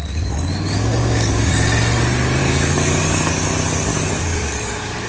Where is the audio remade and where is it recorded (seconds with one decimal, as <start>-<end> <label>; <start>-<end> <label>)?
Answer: 0.0-1.5 remade; 1.5-2.4 recorded; 2.4-3.3 remade; 3.3-3.9 recorded; 3.9-5.1 remade